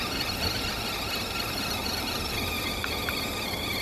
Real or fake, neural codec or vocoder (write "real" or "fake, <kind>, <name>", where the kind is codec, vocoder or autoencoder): real